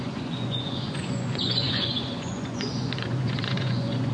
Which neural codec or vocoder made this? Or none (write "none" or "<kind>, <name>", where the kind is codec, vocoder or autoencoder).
vocoder, Vocos